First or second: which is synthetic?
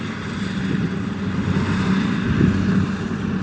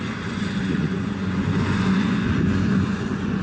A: second